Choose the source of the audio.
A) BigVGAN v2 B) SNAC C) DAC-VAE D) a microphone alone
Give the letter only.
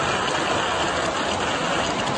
D